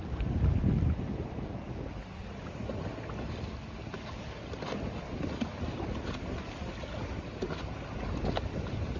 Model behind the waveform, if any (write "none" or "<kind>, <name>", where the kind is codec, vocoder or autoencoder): none